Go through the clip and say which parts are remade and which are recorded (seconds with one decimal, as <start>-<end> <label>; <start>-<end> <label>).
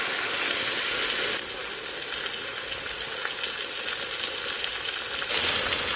0.0-6.0 recorded